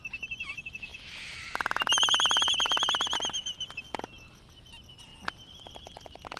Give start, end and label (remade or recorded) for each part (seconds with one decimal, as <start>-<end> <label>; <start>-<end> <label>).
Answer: 0.0-6.4 recorded